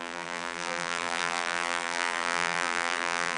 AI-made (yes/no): yes